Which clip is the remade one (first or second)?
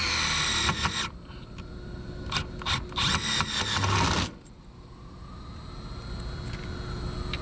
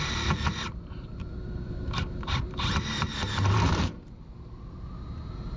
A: second